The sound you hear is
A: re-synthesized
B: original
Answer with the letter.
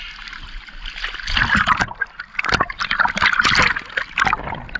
B